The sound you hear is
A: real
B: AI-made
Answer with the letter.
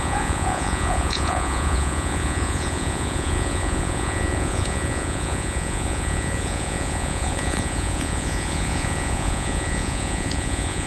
B